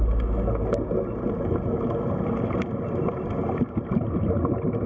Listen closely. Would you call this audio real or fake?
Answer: real